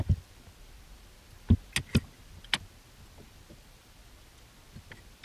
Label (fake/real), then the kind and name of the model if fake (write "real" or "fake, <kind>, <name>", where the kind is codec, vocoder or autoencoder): real